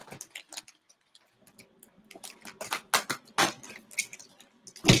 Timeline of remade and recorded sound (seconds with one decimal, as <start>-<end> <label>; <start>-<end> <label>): 0.0-5.0 recorded